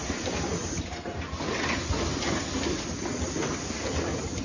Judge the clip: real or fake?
real